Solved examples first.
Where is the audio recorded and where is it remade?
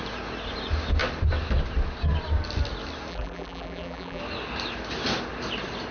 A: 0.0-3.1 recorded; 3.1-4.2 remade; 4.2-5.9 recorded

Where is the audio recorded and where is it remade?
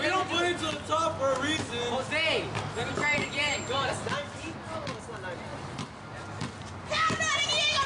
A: 0.0-3.1 recorded; 3.1-3.9 remade; 3.9-5.5 recorded; 5.5-7.3 remade; 7.3-7.9 recorded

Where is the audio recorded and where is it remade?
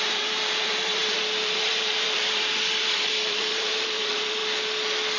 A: 0.0-4.4 remade; 4.4-5.2 recorded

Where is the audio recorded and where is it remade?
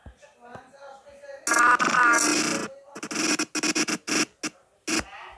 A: 0.0-5.4 recorded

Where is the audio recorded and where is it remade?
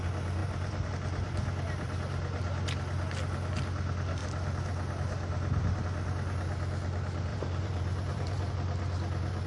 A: 0.0-0.4 recorded; 0.4-0.9 remade; 0.9-7.3 recorded; 7.3-8.5 remade; 8.5-9.5 recorded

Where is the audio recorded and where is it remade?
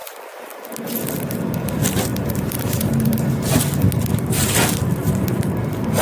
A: 0.0-2.1 recorded; 2.1-3.5 remade; 3.5-6.0 recorded